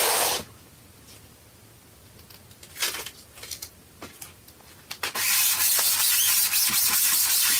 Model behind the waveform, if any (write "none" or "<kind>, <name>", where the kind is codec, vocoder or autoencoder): none